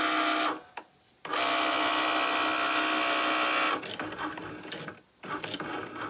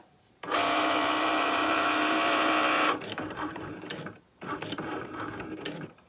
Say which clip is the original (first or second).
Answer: first